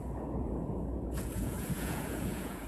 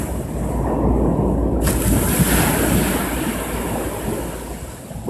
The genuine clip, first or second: second